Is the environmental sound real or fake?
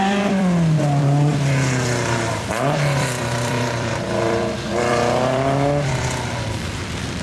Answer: fake